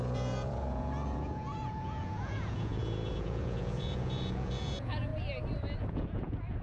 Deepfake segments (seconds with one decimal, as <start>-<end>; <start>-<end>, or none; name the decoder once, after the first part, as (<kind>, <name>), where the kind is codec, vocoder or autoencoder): 0.0-5.1 (vocoder, Vocos); 5.8-6.6